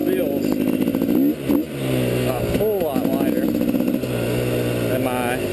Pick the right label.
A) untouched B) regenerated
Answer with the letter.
A